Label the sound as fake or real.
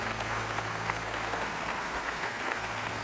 fake